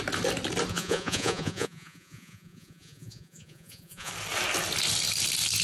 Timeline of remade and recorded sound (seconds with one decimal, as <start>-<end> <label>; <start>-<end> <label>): 0.0-0.7 recorded; 0.7-4.1 remade; 4.1-5.6 recorded

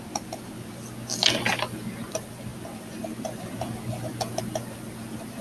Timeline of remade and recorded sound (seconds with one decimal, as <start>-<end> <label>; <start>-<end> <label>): 0.0-5.4 recorded

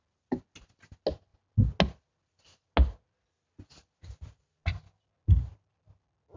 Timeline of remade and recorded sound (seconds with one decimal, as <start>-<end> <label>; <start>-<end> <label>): 0.0-6.4 recorded

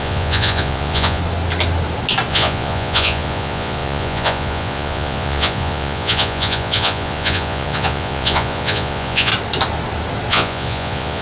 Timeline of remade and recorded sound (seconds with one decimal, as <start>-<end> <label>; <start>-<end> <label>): 0.0-1.2 remade; 1.2-2.3 recorded; 2.3-9.3 remade; 9.3-10.3 recorded; 10.3-11.2 remade

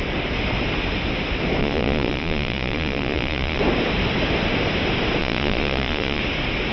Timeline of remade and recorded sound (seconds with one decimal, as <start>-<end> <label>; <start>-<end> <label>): 0.0-1.6 recorded; 1.6-3.6 remade; 3.6-5.2 recorded; 5.2-6.2 remade; 6.2-6.7 recorded